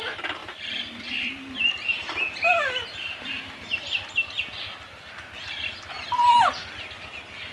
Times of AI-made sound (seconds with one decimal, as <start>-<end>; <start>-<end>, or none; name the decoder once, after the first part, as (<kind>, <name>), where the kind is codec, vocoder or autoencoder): none